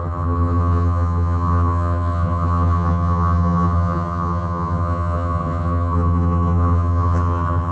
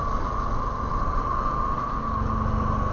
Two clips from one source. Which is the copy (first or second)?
first